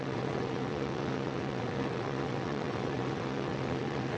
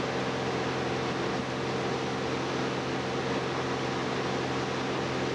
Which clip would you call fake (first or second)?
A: first